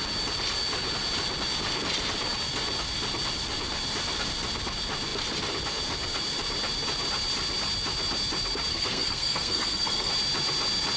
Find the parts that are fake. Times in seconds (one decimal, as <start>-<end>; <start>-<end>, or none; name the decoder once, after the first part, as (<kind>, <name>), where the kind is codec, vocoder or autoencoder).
8.7-10.1 (codec, SNAC)